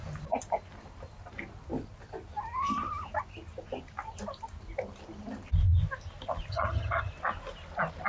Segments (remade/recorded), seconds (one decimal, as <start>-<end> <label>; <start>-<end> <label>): 0.0-6.5 recorded; 6.5-7.1 remade; 7.1-8.1 recorded